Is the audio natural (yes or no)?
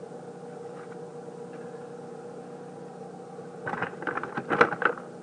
yes